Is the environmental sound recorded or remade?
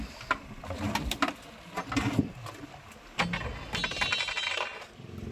recorded